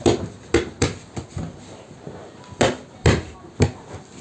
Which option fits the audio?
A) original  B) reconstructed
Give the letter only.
A